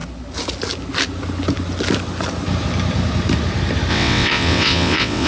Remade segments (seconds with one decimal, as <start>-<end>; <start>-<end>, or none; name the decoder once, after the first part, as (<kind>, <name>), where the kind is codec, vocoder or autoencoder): 3.9-5.3 (vocoder, WaveNeXt)